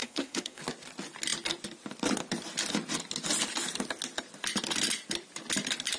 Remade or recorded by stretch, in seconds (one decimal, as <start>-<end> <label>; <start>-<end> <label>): 0.0-0.6 remade; 0.6-6.0 recorded